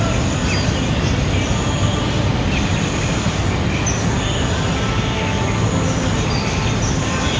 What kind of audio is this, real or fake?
real